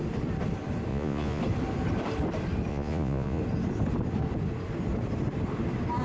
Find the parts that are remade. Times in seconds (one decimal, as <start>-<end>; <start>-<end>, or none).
0.9-1.4; 2.7-3.4